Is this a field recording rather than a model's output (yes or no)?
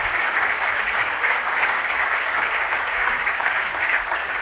no